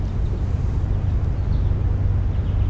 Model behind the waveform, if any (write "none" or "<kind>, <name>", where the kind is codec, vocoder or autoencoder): none